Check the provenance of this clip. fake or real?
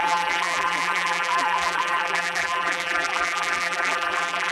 fake